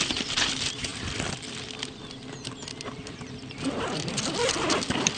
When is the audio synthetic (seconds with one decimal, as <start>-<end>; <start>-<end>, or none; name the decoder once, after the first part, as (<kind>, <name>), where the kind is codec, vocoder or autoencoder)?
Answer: 0.0-0.9 (vocoder, BigVGAN v2); 3.8-5.2